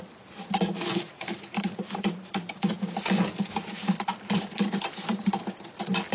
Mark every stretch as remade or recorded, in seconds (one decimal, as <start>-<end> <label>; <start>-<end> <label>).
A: 0.0-0.9 recorded; 0.9-2.7 remade; 2.7-6.1 recorded